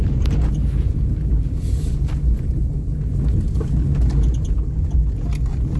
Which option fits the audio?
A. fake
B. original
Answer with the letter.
B